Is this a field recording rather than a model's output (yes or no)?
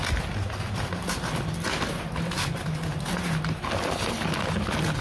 yes